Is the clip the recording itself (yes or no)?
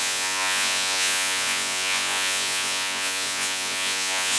no